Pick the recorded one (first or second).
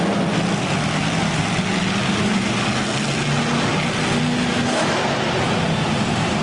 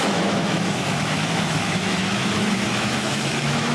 first